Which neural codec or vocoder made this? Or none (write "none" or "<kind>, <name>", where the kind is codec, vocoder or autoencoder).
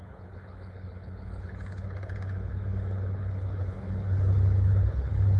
codec, HILCodec